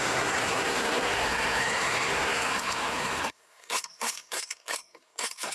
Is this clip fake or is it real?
fake